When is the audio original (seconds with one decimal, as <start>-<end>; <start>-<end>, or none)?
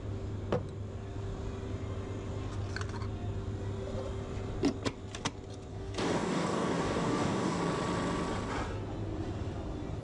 0.0-5.7; 7.6-10.0